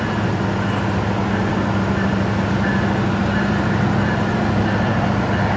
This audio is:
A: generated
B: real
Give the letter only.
B